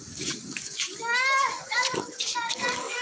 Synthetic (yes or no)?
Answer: yes